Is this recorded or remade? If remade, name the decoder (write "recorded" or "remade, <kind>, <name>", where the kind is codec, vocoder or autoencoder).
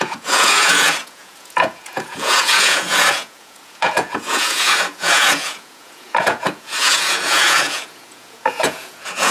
remade, vocoder, Vocos